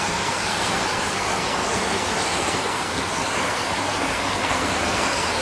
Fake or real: fake